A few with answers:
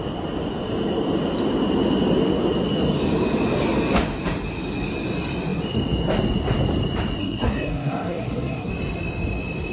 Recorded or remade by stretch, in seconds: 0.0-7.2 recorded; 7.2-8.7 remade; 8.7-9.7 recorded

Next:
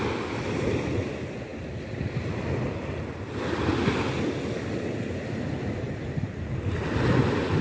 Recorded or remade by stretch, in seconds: 0.0-7.6 recorded

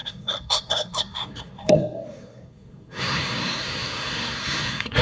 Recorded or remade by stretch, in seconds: 0.0-5.0 remade

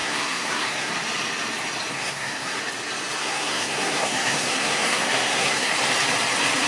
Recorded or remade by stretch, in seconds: 0.0-0.9 remade; 0.9-1.9 recorded; 1.9-2.6 remade; 2.6-3.2 recorded; 3.2-5.7 remade; 5.7-6.7 recorded

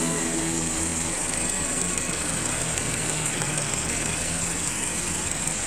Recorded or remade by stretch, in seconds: 0.0-5.7 remade